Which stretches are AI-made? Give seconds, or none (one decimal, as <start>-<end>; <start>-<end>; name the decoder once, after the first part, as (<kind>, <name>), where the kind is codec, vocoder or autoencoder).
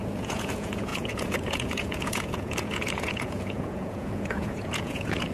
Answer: 0.0-5.3 (vocoder, Vocos)